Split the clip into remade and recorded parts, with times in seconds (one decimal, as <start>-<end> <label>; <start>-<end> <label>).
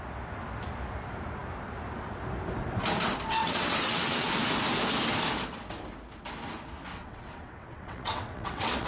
0.0-3.4 recorded; 3.4-4.3 remade; 4.3-6.9 recorded; 6.9-8.9 remade